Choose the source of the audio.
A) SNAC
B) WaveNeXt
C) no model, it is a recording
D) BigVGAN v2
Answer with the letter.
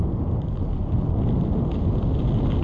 C